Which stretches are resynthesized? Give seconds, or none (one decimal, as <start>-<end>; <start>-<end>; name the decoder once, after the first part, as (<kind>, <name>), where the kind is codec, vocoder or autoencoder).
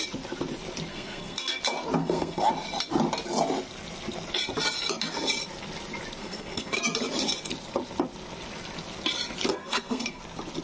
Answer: 0.9-1.6 (codec, SNAC); 2.0-2.5; 6.2-6.8; 9.5-10.2